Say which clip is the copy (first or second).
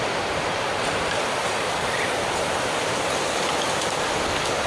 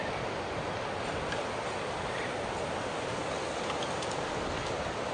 first